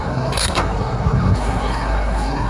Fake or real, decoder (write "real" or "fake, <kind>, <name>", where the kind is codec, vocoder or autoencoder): fake, codec, SNAC